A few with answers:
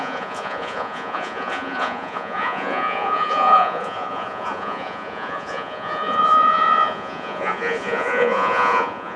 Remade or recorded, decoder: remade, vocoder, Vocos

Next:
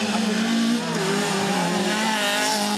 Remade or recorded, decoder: recorded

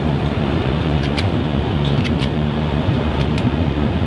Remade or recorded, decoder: remade, vocoder, Vocos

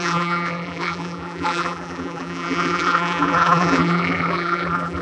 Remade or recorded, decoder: remade, vocoder, BigVGAN v2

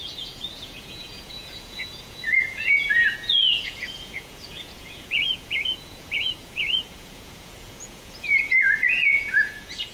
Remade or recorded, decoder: remade, vocoder, Vocos